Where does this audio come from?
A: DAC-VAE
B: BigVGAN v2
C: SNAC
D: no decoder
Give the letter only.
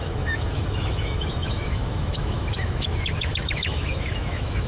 A